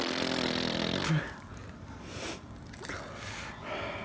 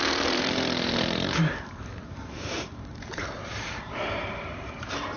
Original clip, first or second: first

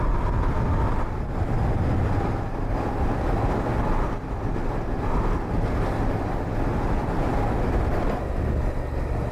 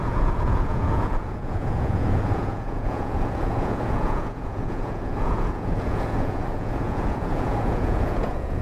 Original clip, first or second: first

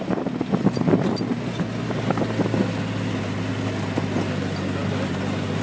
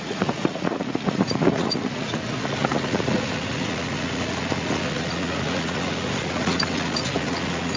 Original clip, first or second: first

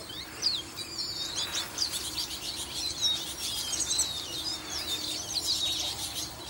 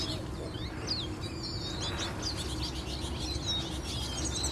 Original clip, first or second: second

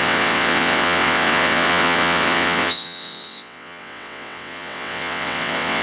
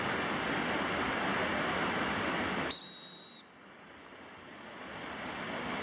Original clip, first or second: second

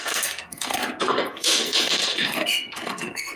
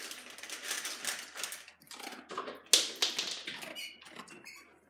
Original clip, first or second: second